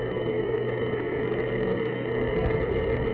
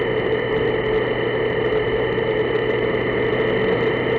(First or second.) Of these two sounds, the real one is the second